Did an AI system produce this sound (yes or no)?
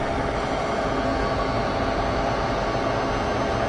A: no